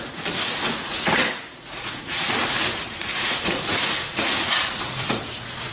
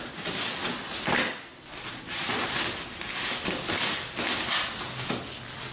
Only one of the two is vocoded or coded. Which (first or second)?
first